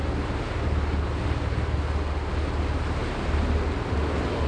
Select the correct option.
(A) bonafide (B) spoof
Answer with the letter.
A